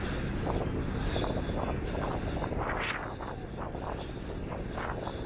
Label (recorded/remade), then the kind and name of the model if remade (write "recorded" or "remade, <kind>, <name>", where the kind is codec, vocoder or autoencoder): recorded